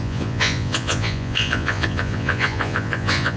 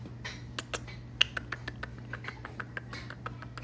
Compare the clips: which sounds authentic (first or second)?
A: second